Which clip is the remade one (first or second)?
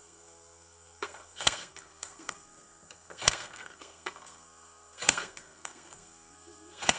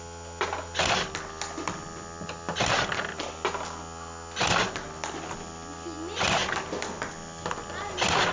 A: first